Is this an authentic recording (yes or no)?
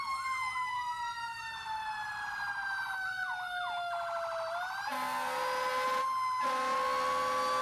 yes